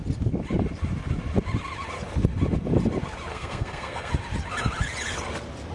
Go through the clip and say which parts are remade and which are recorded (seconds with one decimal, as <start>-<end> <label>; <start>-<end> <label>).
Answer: 0.0-3.3 recorded; 3.3-4.1 remade; 4.1-5.7 recorded